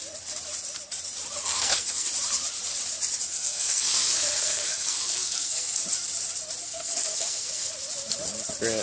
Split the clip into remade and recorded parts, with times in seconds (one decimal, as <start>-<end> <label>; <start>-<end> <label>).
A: 0.0-1.4 recorded; 1.4-2.1 remade; 2.1-3.3 recorded; 3.3-5.8 remade; 5.8-6.6 recorded; 6.6-7.7 remade; 7.7-8.8 recorded